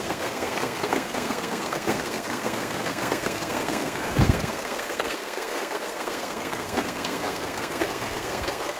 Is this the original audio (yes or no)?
no